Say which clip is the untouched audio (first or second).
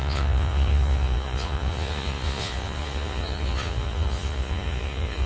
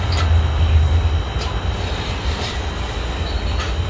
second